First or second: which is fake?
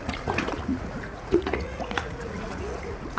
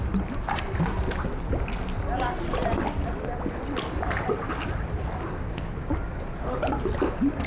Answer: first